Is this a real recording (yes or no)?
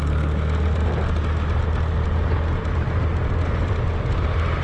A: yes